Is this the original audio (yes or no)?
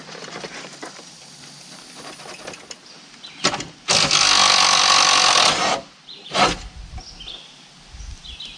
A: yes